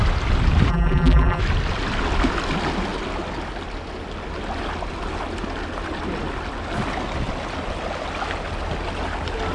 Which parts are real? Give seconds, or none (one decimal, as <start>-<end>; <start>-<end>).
0.0-0.7; 1.4-9.5

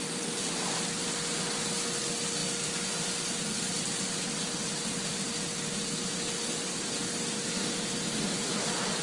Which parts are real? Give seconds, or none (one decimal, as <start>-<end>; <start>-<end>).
0.0-4.6; 5.3-9.0

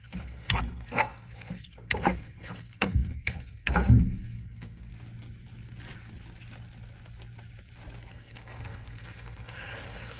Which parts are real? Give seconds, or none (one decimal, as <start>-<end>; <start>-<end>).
4.9-8.1